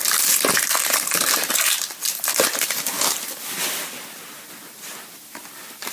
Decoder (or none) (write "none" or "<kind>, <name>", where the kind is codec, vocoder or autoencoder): none